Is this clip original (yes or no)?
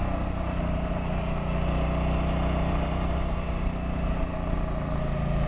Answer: yes